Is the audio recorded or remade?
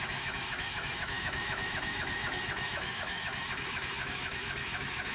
remade